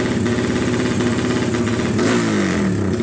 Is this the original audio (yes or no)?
yes